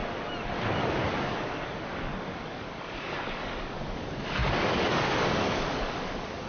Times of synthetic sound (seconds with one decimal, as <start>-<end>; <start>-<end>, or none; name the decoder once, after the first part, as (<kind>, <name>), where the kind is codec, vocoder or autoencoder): 1.2-6.5 (codec, DAC)